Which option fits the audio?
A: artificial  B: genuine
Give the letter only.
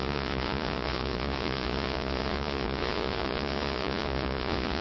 A